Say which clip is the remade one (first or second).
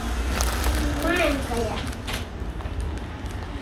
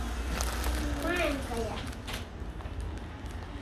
first